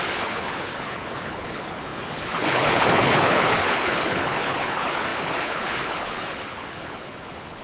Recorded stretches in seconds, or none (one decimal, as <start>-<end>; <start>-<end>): none